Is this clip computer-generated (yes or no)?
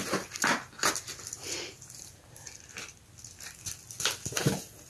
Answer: no